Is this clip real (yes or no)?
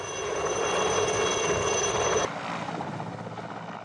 yes